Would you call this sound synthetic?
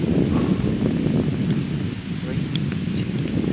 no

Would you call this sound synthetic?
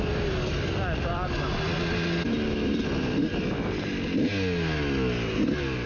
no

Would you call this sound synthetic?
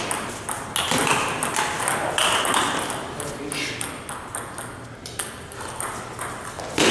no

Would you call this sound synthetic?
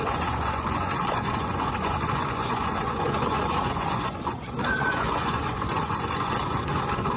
yes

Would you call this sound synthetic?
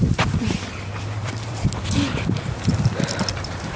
yes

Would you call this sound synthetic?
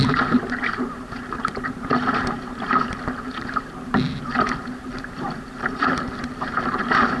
yes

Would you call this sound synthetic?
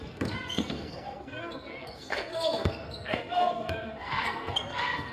yes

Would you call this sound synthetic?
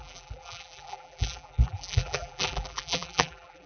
yes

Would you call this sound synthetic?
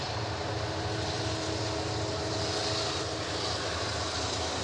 no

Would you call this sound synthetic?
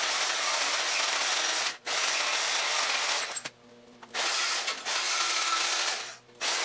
no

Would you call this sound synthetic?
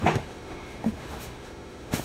yes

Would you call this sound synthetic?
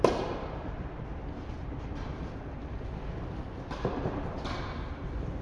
no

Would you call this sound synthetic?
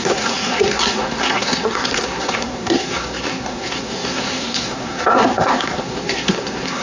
yes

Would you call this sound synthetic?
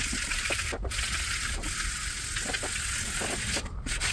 no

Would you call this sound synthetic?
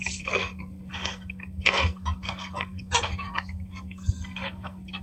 yes